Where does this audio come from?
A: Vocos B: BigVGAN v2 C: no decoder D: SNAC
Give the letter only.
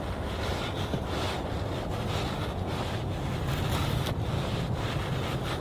C